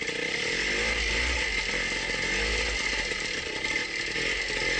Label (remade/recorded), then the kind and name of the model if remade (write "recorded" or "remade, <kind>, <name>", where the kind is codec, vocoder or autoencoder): recorded